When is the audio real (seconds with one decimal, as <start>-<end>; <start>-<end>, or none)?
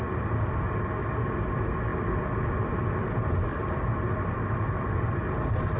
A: 0.0-1.9; 2.7-3.5; 5.2-5.8